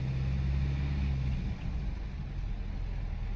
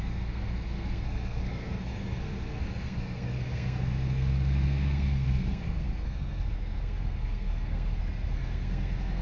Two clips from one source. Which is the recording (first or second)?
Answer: first